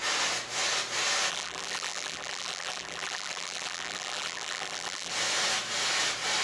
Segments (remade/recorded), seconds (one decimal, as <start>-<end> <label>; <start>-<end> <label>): 0.0-1.3 recorded; 1.3-5.1 remade; 5.1-6.4 recorded